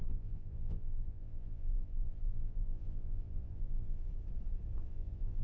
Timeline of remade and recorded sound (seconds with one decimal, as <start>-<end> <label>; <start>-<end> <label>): 0.0-4.1 remade; 4.1-4.9 recorded; 4.9-5.4 remade